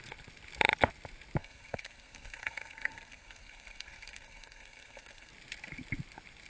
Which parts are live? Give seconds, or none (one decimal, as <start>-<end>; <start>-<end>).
0.0-1.4; 5.3-6.5